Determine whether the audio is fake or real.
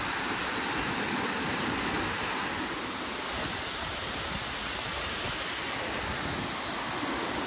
real